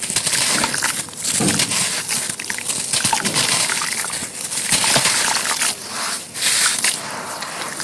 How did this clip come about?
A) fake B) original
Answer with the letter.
B